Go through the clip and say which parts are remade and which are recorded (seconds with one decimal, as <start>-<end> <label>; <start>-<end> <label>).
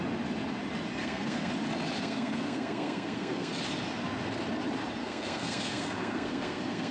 0.0-1.0 recorded; 1.0-1.5 remade; 1.5-2.0 recorded; 2.0-3.5 remade; 3.5-5.0 recorded; 5.0-6.9 remade